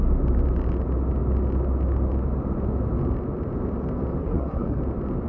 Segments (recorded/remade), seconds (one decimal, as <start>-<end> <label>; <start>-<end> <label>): 0.0-4.2 recorded; 4.2-4.8 remade; 4.8-5.3 recorded